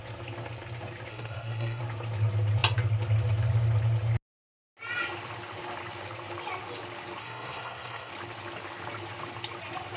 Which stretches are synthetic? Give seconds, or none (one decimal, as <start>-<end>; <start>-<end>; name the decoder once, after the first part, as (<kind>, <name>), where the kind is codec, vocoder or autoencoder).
1.1-1.8 (codec, SNAC); 7.2-8.1

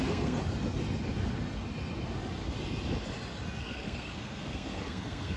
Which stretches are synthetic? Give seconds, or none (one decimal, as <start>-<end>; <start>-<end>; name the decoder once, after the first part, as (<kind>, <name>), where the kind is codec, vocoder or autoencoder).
0.0-0.4 (codec, SNAC); 3.6-5.4

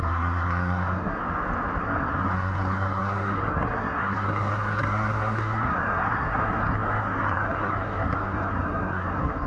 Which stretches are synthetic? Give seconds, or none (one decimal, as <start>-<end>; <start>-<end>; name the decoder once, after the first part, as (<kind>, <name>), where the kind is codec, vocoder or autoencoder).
0.0-1.2 (codec, SNAC); 1.8-9.5

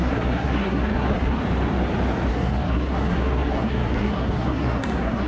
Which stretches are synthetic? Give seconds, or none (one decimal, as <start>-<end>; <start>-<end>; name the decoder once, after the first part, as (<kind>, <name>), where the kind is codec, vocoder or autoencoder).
0.0-1.4 (codec, SNAC); 2.3-5.3

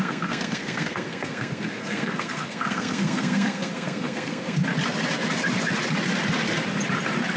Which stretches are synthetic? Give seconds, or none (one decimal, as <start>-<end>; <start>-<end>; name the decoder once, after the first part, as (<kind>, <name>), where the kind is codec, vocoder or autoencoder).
0.0-4.6 (codec, SNAC)

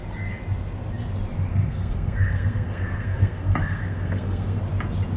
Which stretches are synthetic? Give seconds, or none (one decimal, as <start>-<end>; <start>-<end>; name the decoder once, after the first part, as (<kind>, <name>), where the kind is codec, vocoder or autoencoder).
1.5-4.6 (codec, SNAC)

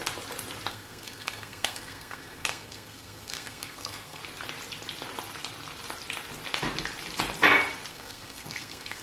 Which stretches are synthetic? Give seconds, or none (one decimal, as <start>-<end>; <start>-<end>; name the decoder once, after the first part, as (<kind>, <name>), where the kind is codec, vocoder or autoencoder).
0.7-4.2 (codec, SNAC); 7.9-9.0

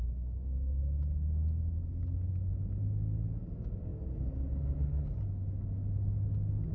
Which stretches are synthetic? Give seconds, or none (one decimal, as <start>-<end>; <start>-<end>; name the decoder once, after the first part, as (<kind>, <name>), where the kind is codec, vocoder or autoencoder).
none